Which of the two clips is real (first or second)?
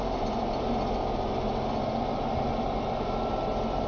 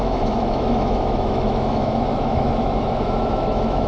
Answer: first